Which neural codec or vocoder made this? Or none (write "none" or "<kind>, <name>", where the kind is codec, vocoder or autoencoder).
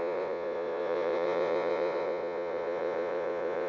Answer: vocoder, Vocos